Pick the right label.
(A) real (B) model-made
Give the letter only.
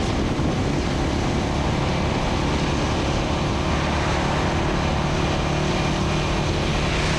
A